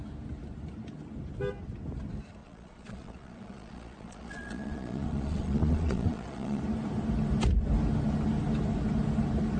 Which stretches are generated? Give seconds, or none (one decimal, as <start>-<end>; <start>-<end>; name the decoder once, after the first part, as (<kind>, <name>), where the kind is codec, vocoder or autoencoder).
2.4-6.6 (vocoder, Vocos)